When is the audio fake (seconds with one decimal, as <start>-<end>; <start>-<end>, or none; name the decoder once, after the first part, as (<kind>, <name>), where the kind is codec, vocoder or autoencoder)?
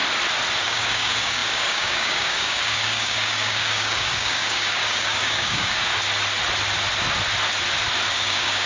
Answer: 0.6-5.9 (codec, DAC); 8.1-8.7